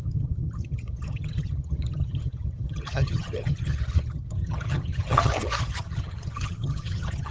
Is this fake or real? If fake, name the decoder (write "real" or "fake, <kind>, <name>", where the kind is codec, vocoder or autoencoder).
fake, vocoder, HiFi-GAN